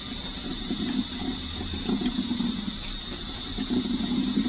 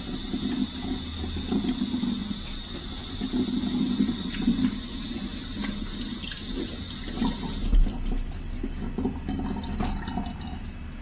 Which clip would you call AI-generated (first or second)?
first